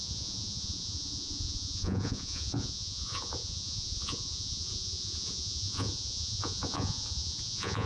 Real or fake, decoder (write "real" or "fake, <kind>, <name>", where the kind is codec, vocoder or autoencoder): fake, vocoder, Vocos